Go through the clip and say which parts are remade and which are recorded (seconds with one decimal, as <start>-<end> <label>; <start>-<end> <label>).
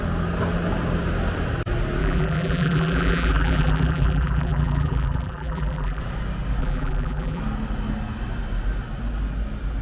0.0-2.0 recorded; 2.0-6.0 remade; 6.0-6.6 recorded; 6.6-7.4 remade; 7.4-9.8 recorded